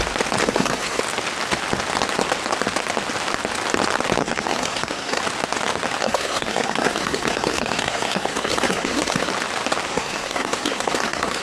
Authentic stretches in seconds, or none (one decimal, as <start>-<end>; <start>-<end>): 0.0-0.4; 1.0-4.2; 5.2-6.0; 9.3-9.9